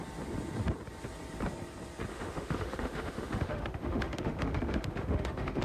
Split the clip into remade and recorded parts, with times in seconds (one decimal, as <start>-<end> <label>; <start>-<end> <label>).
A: 0.0-2.1 recorded; 2.1-5.6 remade